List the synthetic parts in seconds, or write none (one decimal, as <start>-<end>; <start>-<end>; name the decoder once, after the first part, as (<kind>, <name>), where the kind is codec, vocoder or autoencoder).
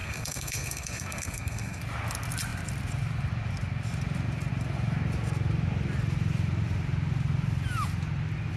0.0-1.8 (codec, SNAC)